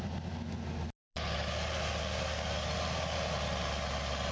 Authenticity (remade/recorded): recorded